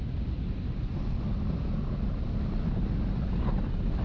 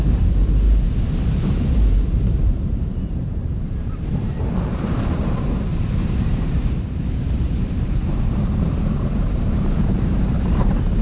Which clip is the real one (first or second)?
first